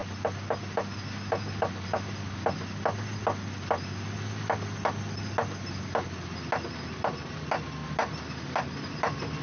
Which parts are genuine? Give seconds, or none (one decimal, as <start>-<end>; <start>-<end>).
0.0-9.4